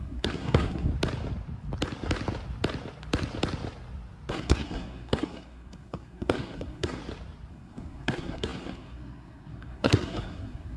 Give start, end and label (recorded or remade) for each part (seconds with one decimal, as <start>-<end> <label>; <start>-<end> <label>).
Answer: 0.0-0.9 remade; 0.9-4.3 recorded; 4.3-7.0 remade; 7.0-7.5 recorded; 7.5-10.8 remade